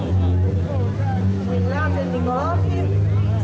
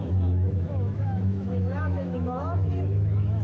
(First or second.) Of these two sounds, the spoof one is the second